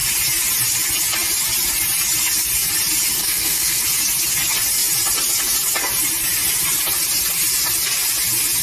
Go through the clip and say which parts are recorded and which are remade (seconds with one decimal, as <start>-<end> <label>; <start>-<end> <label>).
0.0-3.2 recorded; 3.2-3.8 remade; 3.8-8.6 recorded